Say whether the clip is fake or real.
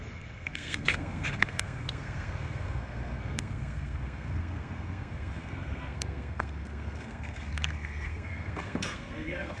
fake